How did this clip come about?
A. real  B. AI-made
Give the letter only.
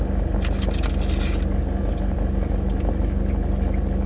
A